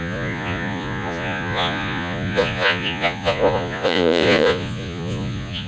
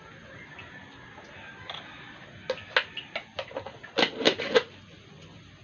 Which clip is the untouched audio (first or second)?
second